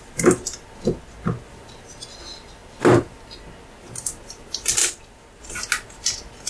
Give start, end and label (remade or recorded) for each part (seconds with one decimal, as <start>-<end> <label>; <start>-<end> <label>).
0.0-6.5 recorded